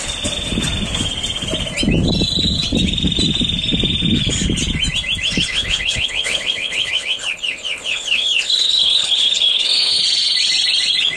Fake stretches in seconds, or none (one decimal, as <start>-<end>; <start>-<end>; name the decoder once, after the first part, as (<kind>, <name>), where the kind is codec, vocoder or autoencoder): 5.5-10.0 (codec, HILCodec)